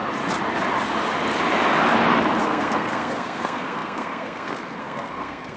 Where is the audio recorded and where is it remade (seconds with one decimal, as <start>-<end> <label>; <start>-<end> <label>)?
0.0-2.4 recorded; 2.4-5.6 remade